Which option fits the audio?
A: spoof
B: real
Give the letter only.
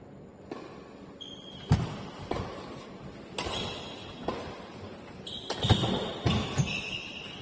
B